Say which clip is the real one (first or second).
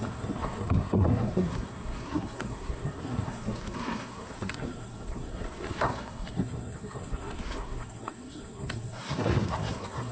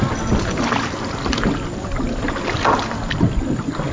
second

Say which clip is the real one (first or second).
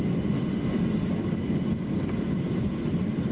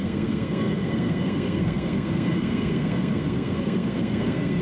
first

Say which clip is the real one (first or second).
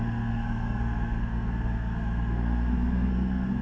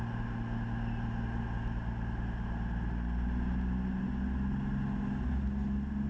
second